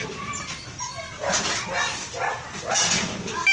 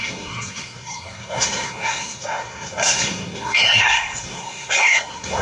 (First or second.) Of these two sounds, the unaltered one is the first